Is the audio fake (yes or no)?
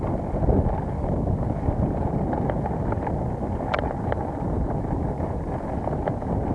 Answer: no